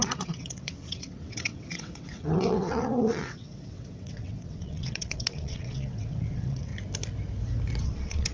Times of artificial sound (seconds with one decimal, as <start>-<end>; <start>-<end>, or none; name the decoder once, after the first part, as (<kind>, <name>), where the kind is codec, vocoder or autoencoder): 0.0-6.7 (vocoder, WaveNeXt); 7.8-8.3